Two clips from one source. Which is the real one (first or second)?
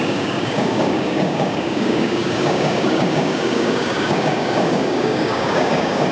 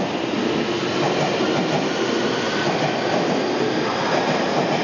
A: second